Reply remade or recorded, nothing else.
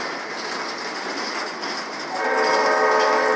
recorded